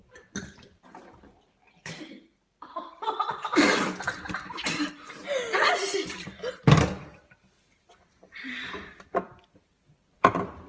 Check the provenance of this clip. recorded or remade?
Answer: remade